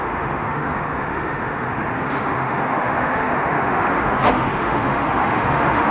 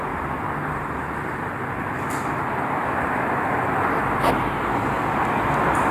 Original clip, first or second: second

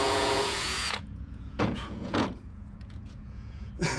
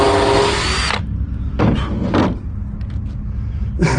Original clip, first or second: second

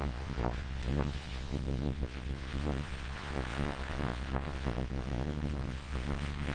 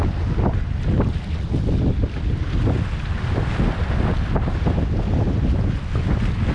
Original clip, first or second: second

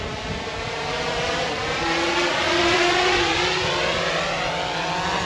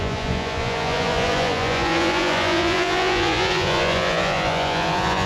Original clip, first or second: first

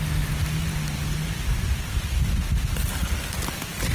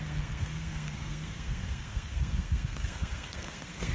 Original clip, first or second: first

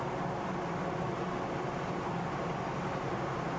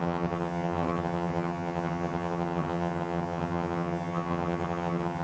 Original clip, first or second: first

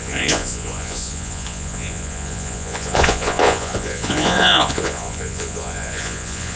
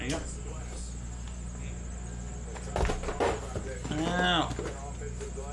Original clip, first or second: second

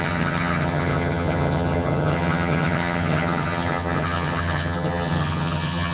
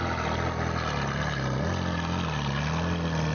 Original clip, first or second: second